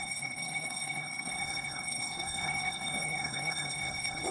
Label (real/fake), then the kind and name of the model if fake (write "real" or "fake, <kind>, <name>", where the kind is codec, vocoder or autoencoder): fake, codec, SNAC